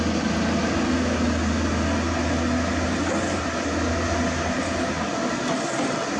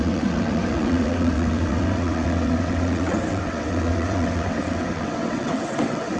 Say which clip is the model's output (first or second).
second